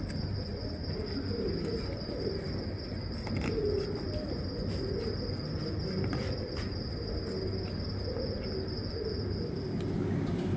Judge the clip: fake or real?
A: real